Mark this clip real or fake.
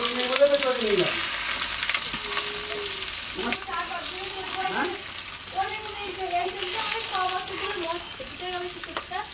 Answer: real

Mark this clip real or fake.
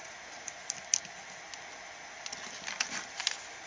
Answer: real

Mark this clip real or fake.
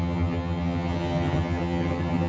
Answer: fake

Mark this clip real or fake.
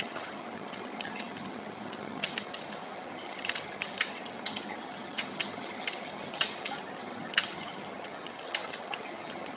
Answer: fake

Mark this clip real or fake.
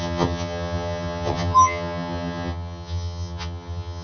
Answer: fake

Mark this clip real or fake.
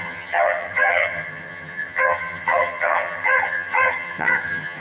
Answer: fake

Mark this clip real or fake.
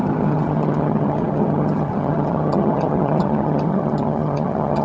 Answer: fake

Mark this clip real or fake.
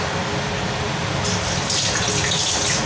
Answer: real